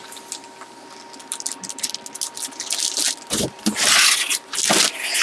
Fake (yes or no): no